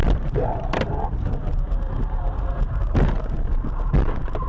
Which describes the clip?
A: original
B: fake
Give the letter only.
A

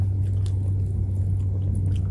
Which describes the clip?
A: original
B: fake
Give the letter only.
A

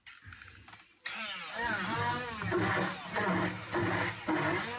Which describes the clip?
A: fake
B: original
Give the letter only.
B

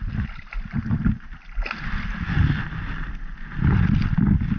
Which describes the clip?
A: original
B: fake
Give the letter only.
A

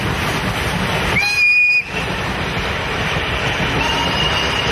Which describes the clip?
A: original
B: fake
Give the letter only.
A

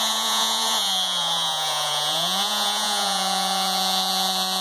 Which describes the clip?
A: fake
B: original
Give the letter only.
A